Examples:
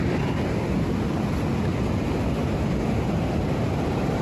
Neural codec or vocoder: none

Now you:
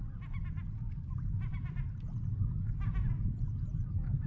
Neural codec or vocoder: none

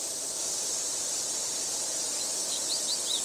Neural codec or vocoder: vocoder, BigVGAN v2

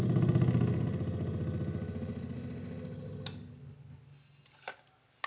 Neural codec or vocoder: none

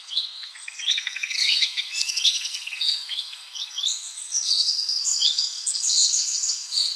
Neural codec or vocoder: codec, SNAC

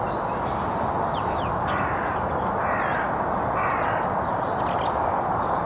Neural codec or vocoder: none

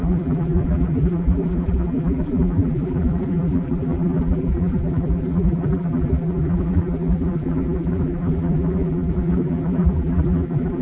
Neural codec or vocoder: vocoder, BigVGAN v2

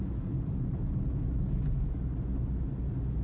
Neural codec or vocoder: none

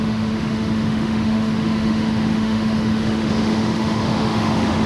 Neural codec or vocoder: autoencoder, DAC-VAE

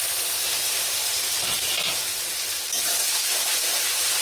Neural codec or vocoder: none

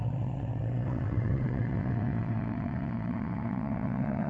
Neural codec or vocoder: vocoder, WaveNeXt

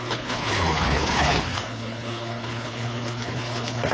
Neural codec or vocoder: codec, HILCodec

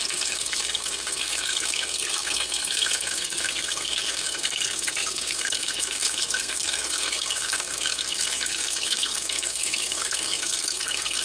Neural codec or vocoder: codec, SNAC